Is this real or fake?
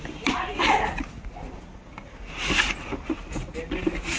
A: real